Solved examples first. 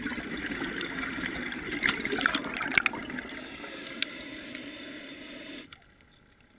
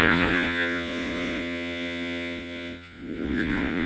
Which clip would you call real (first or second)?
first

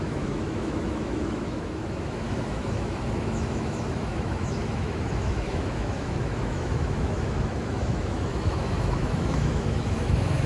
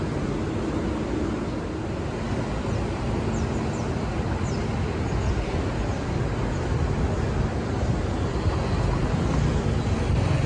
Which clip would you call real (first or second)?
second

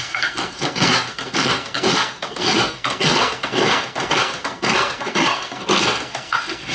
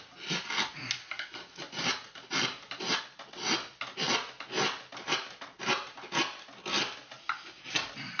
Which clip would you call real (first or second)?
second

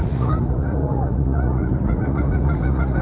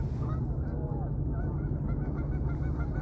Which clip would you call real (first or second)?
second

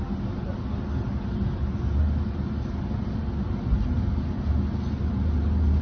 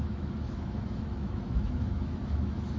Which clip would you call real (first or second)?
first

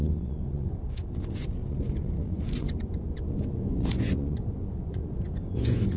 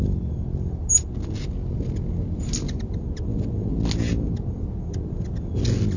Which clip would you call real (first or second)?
second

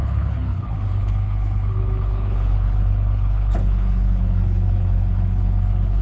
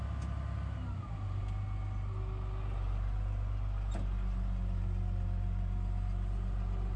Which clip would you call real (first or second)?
second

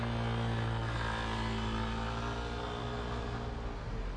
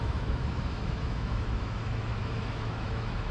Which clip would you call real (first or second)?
first